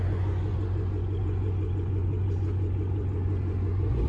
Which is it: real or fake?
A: fake